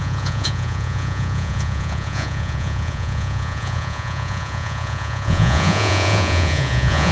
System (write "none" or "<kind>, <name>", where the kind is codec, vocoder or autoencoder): vocoder, Vocos